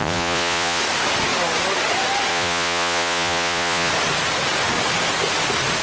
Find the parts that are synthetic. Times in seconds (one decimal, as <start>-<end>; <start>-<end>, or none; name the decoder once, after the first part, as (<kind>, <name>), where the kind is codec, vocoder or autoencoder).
0.0-0.8 (vocoder, Vocos); 2.3-3.9